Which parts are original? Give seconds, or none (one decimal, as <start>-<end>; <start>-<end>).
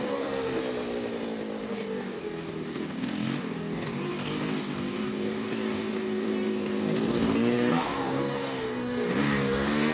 0.6-1.7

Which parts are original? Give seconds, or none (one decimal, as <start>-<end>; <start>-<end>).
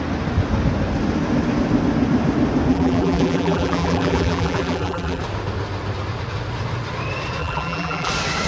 0.0-2.7; 5.2-7.4; 8.1-8.5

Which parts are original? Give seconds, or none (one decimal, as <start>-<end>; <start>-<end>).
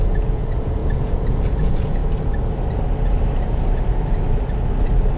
2.0-5.2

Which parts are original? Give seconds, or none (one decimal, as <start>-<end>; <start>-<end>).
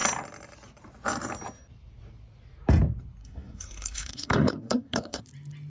0.0-3.2; 5.2-5.7